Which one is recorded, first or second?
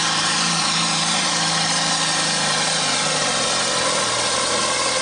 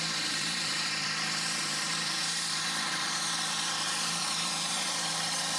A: first